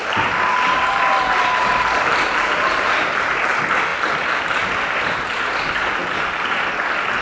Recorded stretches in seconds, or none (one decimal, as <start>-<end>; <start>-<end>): 0.0-6.0; 6.7-7.2